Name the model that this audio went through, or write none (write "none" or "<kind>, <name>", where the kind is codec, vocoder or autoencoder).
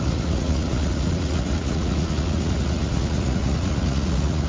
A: vocoder, Vocos